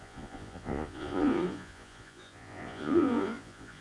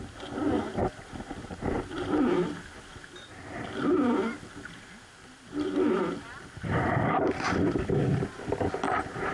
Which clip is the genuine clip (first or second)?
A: second